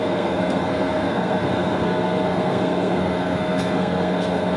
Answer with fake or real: fake